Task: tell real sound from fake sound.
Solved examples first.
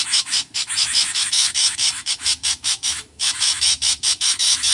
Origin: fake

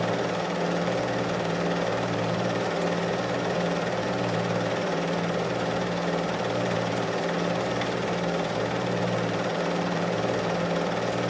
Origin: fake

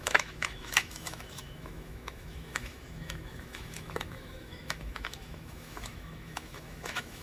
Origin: fake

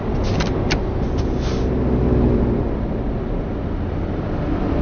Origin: real